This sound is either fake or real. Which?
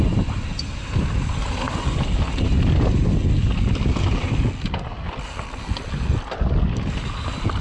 real